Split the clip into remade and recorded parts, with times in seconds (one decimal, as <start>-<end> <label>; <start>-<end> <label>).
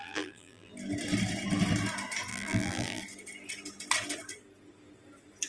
0.0-0.7 remade; 0.7-2.3 recorded; 2.3-3.0 remade; 3.0-5.5 recorded